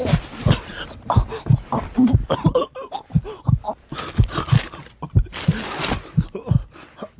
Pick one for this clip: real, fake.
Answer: real